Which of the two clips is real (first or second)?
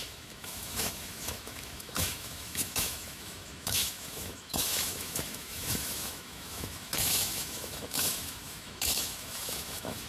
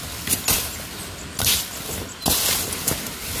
second